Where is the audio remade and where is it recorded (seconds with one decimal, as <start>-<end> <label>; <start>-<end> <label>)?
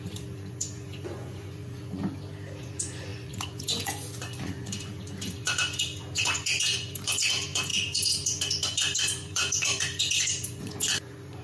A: 0.0-2.0 remade; 2.0-2.6 recorded; 2.6-11.4 remade